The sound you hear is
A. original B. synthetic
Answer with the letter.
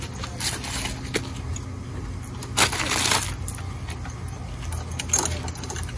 A